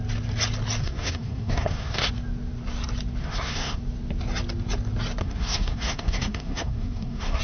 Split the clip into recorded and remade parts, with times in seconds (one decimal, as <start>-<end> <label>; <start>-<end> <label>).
0.0-0.8 recorded; 0.8-2.1 remade; 2.1-3.2 recorded; 3.2-3.8 remade; 3.8-5.2 recorded; 5.2-7.4 remade